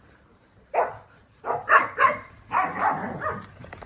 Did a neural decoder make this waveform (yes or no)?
yes